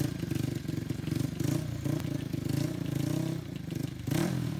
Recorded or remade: recorded